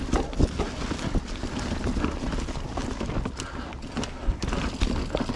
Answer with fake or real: real